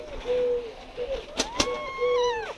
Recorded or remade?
recorded